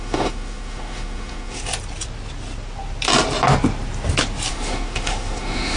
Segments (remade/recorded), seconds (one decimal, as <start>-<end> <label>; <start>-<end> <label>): 0.0-1.7 remade; 1.7-4.5 recorded; 4.5-5.8 remade